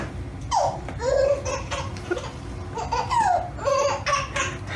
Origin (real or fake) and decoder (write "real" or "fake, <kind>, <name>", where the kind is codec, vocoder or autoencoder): real